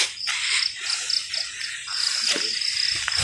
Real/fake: real